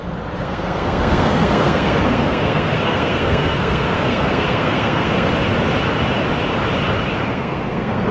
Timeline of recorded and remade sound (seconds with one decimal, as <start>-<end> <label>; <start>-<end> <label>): 0.0-0.4 recorded; 0.4-5.3 remade; 5.3-7.3 recorded; 7.3-8.1 remade